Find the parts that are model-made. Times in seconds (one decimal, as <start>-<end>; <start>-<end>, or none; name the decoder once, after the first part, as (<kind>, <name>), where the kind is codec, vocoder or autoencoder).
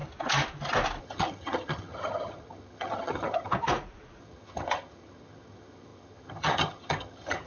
1.0-3.5 (vocoder, HiFi-GAN); 4.2-7.5